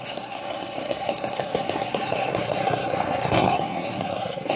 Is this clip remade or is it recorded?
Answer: remade